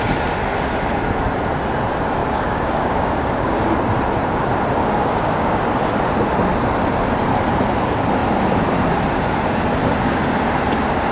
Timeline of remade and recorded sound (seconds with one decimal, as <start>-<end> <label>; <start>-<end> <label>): 0.0-2.2 recorded; 2.2-3.6 remade; 3.6-4.8 recorded; 4.8-5.6 remade; 5.6-11.1 recorded